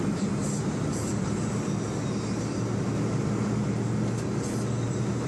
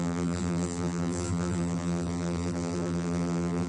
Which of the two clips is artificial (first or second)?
second